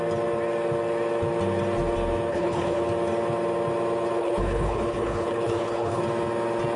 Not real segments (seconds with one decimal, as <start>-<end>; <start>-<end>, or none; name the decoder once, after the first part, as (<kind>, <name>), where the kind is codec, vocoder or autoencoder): 2.3-2.8 (codec, HILCodec); 4.2-6.0